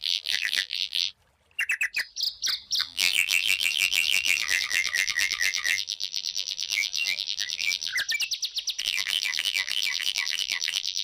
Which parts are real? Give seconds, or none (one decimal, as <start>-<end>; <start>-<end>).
1.1-2.8; 7.9-8.8